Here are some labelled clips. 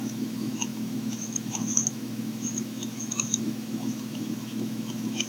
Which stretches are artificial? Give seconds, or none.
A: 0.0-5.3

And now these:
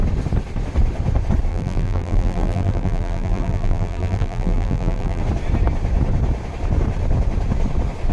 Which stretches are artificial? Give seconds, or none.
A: 1.5-5.2

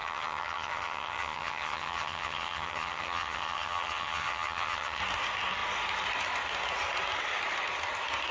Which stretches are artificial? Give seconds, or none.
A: 0.0-5.0

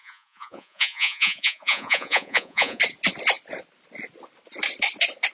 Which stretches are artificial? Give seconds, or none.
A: 0.0-2.8

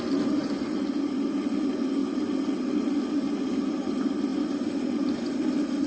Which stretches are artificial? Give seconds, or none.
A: none